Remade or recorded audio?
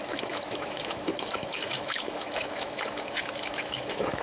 remade